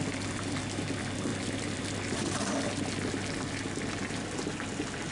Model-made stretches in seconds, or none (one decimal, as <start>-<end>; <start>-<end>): none